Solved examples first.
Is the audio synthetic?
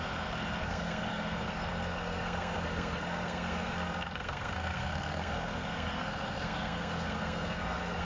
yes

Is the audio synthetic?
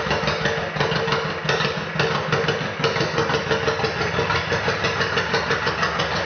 no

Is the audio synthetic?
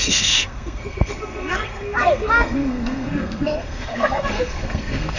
yes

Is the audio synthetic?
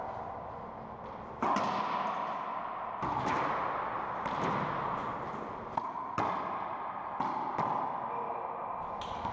no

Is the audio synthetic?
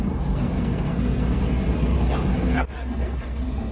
yes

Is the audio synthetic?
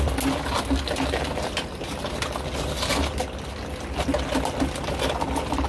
no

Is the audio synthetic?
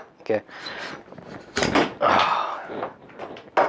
no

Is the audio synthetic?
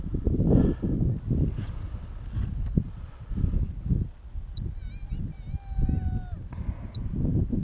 no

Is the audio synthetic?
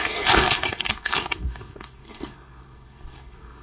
yes